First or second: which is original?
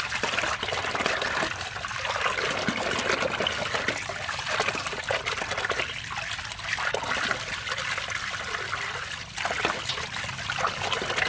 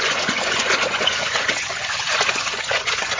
first